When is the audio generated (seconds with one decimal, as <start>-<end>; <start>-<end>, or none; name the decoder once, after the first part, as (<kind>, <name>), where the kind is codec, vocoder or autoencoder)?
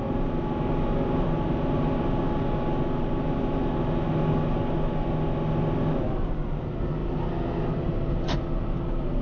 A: none